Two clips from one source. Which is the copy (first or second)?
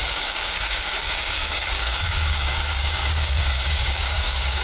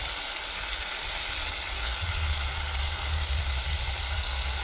first